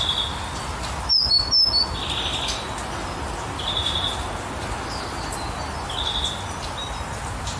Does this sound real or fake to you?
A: real